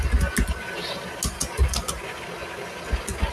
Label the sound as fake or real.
real